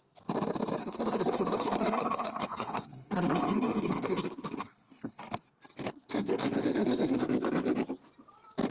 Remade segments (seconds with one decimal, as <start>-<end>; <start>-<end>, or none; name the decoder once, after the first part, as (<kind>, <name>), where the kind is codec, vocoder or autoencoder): 0.8-5.2 (codec, SNAC); 5.9-7.2